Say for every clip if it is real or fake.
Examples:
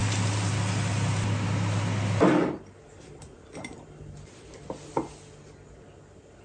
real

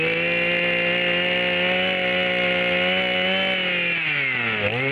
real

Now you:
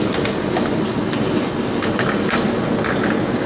real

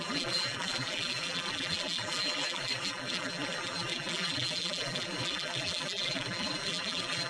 fake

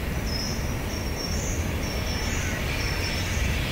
real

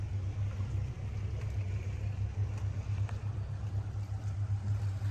real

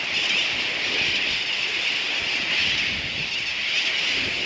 real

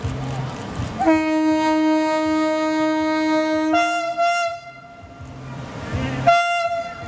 real